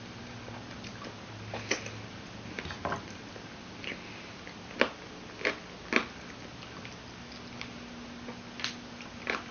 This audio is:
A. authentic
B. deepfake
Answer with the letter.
A